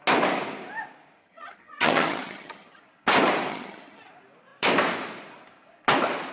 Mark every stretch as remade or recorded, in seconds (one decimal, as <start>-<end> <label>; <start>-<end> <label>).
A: 0.0-1.2 recorded; 1.2-2.8 remade; 2.8-3.5 recorded; 3.5-4.1 remade; 4.1-6.3 recorded